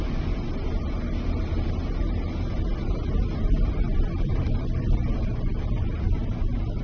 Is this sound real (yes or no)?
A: yes